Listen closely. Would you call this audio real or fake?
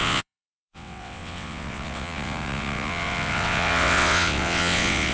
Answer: fake